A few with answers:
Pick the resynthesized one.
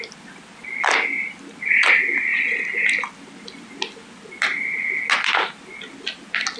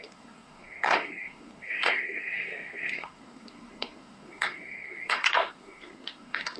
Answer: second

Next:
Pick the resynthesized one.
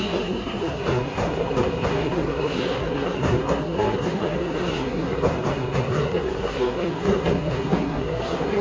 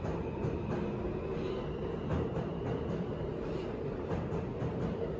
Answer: first